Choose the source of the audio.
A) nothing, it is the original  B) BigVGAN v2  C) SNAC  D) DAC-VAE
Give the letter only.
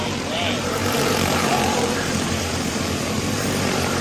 B